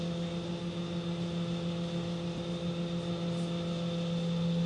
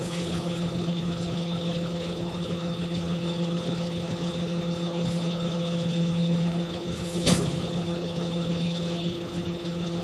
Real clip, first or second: first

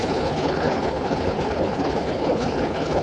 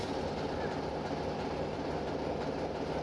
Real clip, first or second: second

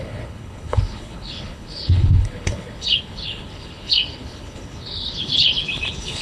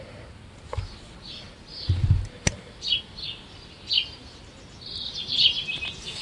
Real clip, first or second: second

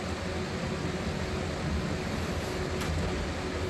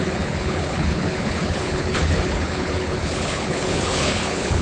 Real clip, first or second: first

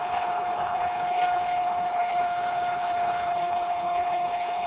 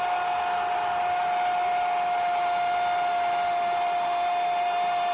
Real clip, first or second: second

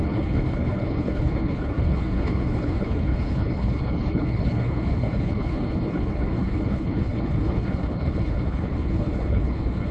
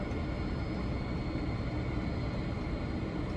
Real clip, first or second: second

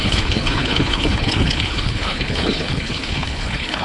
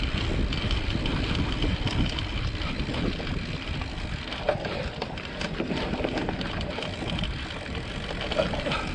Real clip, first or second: second